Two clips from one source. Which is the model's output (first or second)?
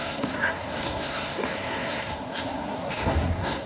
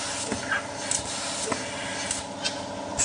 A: first